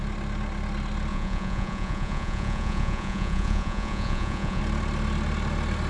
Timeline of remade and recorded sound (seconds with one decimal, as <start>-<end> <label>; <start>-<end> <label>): 0.0-1.1 recorded; 1.1-4.6 remade; 4.6-5.9 recorded